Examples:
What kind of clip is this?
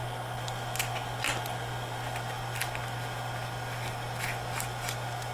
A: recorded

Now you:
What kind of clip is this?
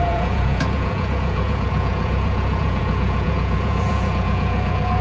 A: remade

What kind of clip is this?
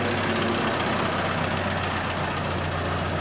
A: recorded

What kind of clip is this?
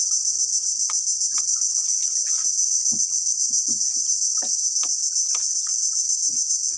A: recorded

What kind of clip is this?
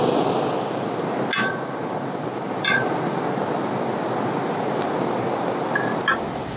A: recorded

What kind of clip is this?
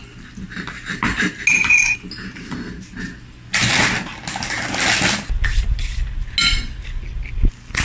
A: recorded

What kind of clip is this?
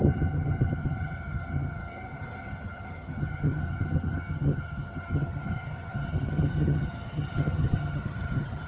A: remade